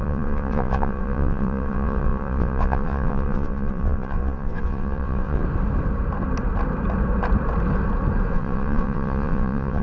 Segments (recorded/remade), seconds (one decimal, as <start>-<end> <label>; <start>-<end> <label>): 0.0-5.4 remade; 5.4-8.3 recorded; 8.3-9.8 remade